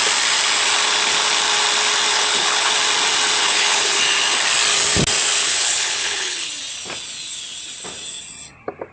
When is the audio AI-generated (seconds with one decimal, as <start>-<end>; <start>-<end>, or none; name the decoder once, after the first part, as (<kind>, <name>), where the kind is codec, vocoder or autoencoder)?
2.1-2.7 (codec, HILCodec); 3.4-4.0; 5.4-6.5